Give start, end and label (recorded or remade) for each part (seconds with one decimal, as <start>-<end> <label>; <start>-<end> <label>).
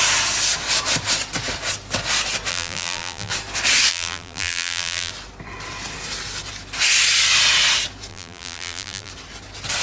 0.0-2.5 recorded; 2.5-3.3 remade; 3.3-3.9 recorded; 3.9-5.1 remade; 5.1-8.1 recorded; 8.1-9.1 remade; 9.1-9.8 recorded